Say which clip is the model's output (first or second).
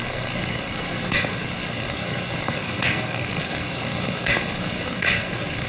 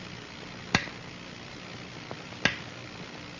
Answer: first